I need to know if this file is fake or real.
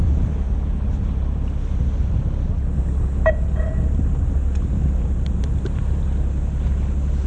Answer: real